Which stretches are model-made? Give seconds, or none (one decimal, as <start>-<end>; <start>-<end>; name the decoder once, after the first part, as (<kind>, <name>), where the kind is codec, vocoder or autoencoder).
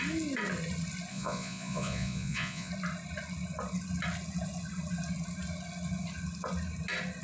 1.1-2.7 (vocoder, Vocos)